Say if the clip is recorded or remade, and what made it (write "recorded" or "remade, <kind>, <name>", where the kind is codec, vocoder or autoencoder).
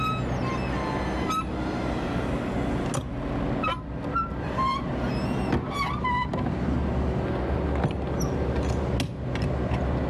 recorded